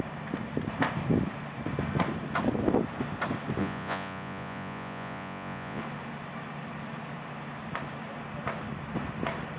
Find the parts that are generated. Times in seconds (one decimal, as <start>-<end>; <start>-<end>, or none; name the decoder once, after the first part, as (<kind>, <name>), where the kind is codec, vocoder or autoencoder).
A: 3.6-5.8 (vocoder, Vocos)